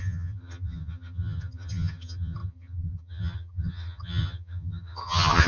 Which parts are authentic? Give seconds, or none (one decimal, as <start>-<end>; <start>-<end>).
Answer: none

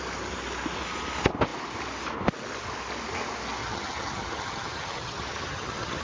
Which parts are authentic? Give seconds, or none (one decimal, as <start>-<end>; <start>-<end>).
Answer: 0.0-3.6

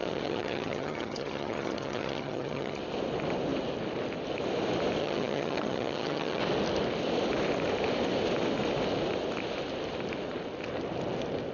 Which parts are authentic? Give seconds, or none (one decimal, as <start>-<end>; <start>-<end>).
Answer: 2.8-5.0; 6.4-11.5

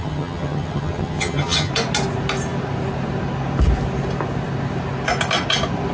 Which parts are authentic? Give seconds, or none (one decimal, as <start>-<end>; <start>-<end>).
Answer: 1.7-5.9